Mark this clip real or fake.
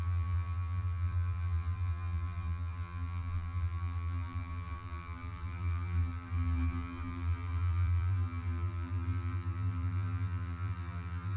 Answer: fake